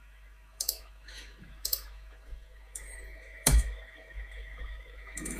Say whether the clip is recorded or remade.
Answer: remade